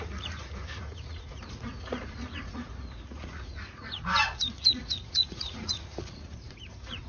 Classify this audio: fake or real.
fake